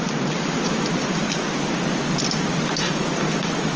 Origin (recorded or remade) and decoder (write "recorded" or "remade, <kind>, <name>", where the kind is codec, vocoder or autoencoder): recorded